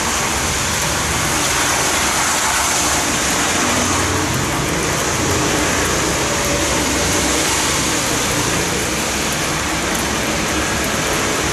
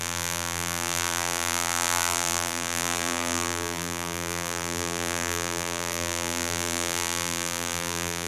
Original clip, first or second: first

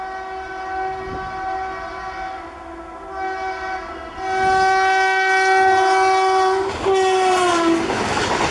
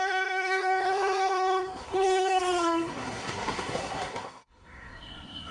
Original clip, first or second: first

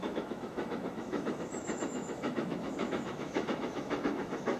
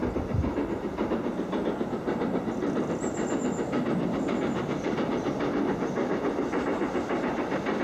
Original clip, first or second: second